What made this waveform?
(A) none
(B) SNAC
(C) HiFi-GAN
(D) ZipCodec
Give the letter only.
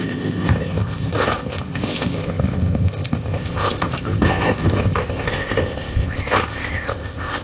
D